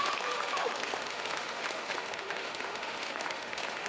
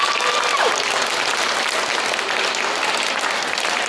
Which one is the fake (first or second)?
first